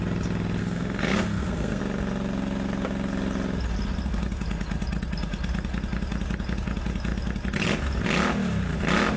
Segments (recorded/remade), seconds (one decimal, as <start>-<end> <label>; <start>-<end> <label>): 0.0-0.6 recorded; 0.6-1.8 remade; 1.8-9.2 recorded